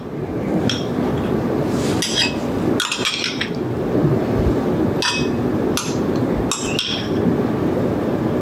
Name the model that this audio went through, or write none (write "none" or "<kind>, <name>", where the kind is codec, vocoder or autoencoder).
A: none